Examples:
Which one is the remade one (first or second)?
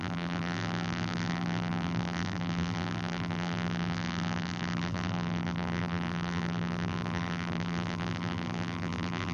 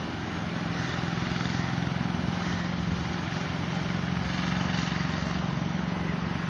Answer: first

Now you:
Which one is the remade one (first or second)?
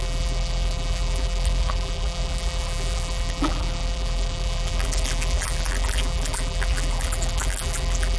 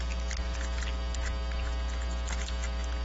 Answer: first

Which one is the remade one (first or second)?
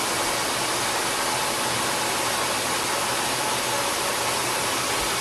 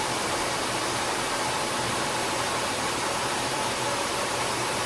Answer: second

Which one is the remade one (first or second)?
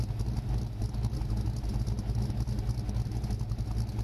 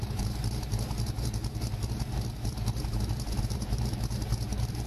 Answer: second